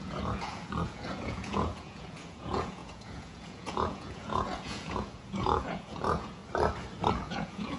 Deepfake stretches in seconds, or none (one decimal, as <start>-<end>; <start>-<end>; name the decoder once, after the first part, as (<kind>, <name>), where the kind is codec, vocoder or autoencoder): 0.0-6.4 (vocoder, Vocos); 7.1-7.8